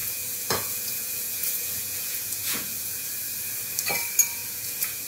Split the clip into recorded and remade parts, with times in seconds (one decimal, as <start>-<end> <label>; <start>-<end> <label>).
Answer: 0.0-3.1 remade; 3.1-4.4 recorded; 4.4-5.1 remade